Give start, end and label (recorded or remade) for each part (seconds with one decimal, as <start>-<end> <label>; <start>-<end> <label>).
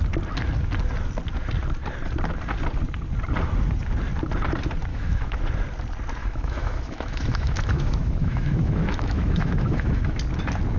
0.0-4.9 recorded; 4.9-5.4 remade; 5.4-6.2 recorded; 6.2-10.2 remade; 10.2-10.8 recorded